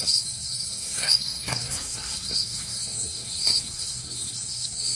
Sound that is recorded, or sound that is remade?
remade